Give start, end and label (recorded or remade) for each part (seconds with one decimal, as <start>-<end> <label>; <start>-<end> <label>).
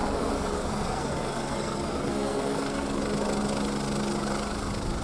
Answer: 0.0-3.0 remade; 3.0-5.0 recorded